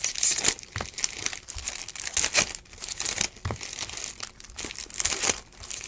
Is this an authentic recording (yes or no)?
yes